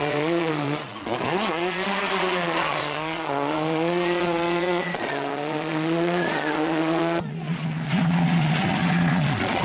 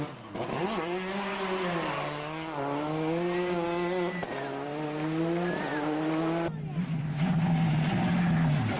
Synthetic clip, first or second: first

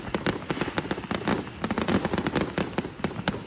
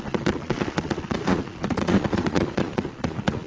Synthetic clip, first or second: second